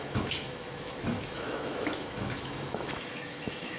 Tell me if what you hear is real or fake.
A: fake